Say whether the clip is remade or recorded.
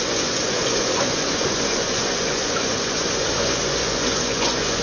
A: remade